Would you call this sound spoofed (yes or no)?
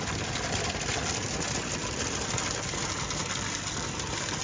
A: no